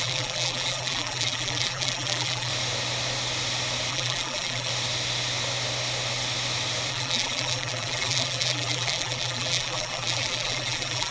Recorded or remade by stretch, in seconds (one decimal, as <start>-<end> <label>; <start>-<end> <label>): 0.0-2.5 remade; 2.5-3.9 recorded; 3.9-4.7 remade; 4.7-6.9 recorded; 6.9-11.1 remade